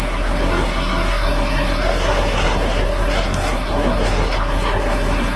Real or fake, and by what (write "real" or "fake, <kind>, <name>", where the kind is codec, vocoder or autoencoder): fake, codec, SNAC